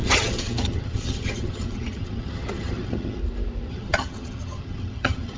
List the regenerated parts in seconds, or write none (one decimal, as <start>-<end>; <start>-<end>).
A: 0.0-3.2; 3.7-5.4